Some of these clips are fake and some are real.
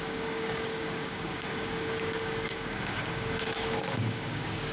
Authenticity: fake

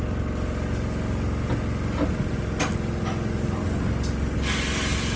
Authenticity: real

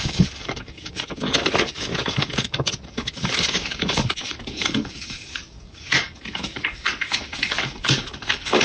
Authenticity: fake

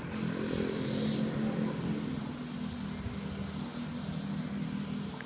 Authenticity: real